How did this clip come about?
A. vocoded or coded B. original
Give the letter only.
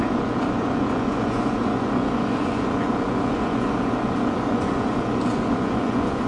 A